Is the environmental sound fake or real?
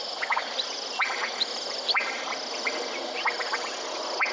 real